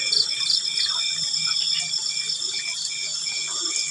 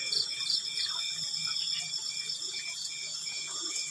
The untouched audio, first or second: first